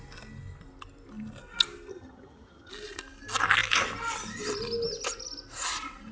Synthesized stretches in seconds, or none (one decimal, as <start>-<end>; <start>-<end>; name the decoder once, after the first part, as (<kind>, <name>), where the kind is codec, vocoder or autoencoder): 1.9-2.7 (vocoder, HiFi-GAN)